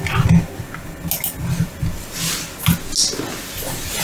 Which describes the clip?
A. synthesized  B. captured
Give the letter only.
B